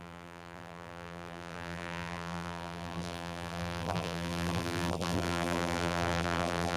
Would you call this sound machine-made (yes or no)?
yes